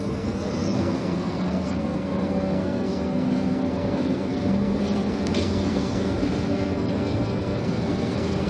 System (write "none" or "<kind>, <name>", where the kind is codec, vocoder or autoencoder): codec, SNAC